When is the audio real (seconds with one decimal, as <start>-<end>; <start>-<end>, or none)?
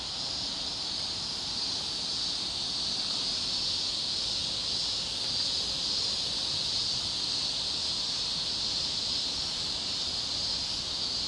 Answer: 0.0-11.3